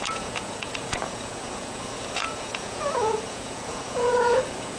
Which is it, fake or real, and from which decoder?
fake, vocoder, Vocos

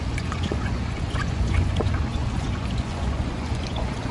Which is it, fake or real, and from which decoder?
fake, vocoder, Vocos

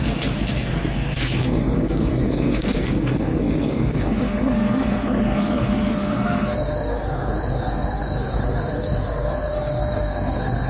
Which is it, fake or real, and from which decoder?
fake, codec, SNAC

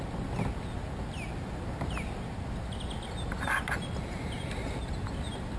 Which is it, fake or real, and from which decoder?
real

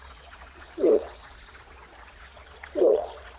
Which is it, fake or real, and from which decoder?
fake, vocoder, Vocos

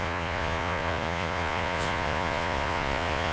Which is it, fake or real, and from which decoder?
fake, vocoder, Vocos